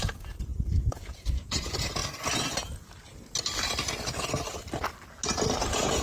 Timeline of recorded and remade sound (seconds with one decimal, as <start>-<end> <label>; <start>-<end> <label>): 0.0-2.0 remade; 2.0-5.6 recorded; 5.6-6.0 remade